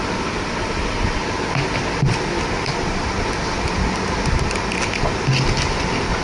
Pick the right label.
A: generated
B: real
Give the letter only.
B